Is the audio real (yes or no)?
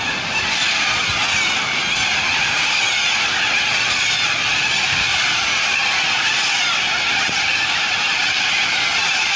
yes